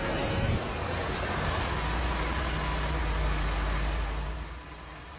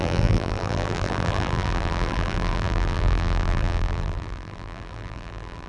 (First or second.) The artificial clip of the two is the second